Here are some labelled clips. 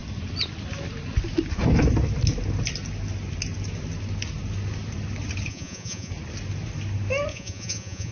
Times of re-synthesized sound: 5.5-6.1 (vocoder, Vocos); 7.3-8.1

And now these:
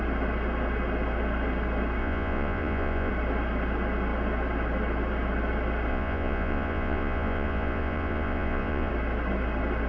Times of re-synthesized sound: 2.0-3.1 (vocoder, Vocos); 5.9-8.9

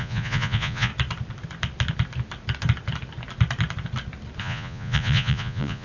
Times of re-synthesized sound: 0.0-0.9 (vocoder, Vocos); 4.4-5.8

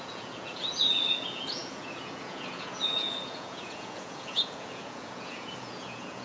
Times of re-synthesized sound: 0.0-6.2 (vocoder, Vocos)

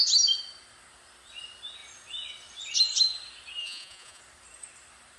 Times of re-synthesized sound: 3.6-4.2 (vocoder, Vocos)

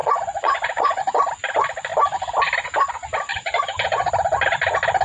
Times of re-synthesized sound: 0.0-1.0 (vocoder, Vocos); 3.3-4.1